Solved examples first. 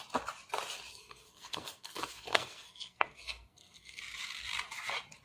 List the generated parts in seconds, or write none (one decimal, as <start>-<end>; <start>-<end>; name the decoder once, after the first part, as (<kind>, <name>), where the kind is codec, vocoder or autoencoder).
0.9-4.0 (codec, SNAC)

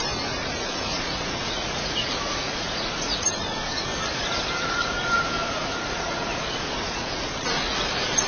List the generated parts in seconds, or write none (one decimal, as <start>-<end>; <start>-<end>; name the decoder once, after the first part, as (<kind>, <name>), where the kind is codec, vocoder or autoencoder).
0.0-3.9 (vocoder, Vocos); 4.5-8.3

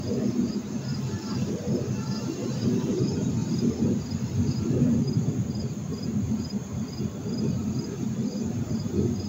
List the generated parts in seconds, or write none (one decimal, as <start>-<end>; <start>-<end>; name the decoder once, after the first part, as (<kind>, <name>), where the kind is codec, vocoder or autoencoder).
0.0-0.9 (vocoder, BigVGAN v2); 2.2-9.3